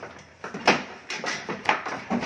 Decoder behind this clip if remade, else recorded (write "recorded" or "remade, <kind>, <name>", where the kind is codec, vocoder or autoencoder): remade, vocoder, BigVGAN v2